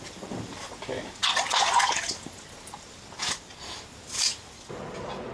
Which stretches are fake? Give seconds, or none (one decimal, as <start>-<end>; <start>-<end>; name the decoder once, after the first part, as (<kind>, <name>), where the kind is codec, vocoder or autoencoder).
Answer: none